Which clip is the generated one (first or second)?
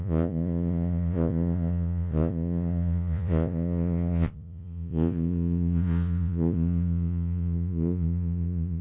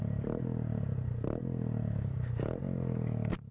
first